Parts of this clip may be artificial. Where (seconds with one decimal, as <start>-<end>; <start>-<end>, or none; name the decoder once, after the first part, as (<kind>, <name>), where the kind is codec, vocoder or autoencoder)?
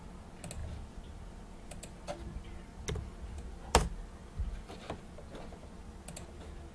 none